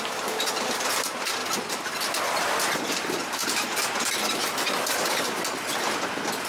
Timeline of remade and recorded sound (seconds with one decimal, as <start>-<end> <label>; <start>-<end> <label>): 0.0-3.4 remade; 3.4-6.1 recorded; 6.1-6.5 remade